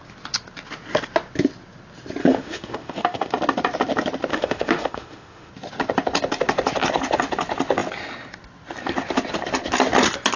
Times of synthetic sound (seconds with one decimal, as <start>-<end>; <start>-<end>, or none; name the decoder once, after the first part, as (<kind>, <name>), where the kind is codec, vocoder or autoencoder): 2.2-3.3 (autoencoder, DAC-VAE); 4.3-5.5